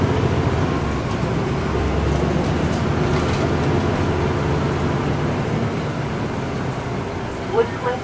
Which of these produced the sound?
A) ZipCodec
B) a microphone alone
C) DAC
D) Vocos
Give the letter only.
B